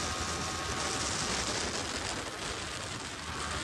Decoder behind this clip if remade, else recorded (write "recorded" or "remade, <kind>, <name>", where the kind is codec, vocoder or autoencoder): recorded